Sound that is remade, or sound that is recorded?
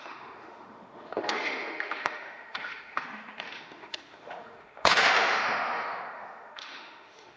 remade